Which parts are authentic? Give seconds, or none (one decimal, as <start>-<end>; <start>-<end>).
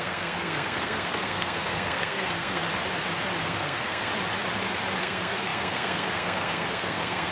2.6-3.4; 4.1-5.0